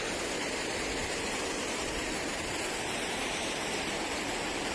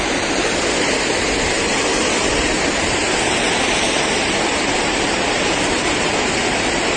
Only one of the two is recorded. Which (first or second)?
second